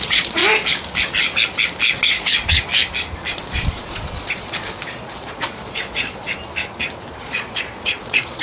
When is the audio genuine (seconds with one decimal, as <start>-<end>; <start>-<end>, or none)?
0.4-2.0; 2.7-3.3; 6.4-7.2